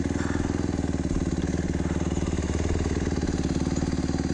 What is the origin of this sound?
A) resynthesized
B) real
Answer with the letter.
B